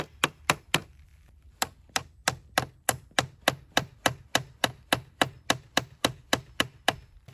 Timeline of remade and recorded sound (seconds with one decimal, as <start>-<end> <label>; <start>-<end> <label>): 0.0-7.3 remade